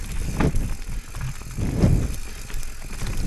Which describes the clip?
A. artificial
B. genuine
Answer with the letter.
B